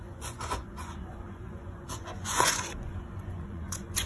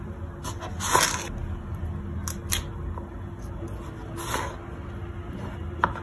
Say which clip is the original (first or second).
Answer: second